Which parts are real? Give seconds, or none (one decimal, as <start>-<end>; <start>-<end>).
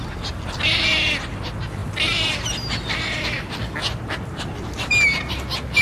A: 0.0-5.8